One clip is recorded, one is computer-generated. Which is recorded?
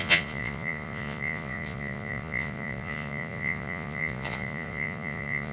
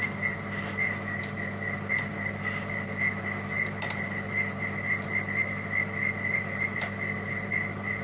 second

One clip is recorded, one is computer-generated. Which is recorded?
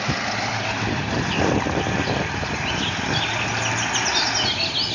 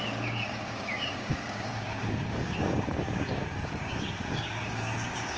first